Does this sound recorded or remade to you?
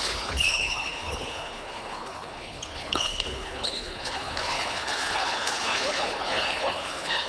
remade